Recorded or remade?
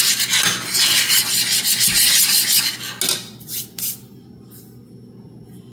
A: recorded